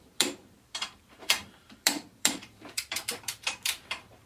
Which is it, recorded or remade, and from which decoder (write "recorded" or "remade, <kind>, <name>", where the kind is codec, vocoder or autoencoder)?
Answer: remade, vocoder, BigVGAN v2